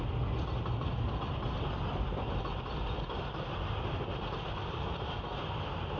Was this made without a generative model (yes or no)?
yes